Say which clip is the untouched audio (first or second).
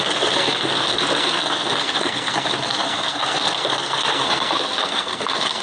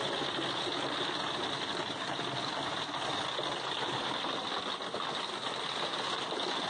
second